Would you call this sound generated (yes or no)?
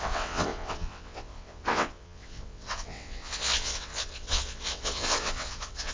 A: yes